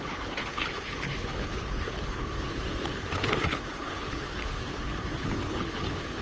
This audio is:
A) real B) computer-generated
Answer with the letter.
B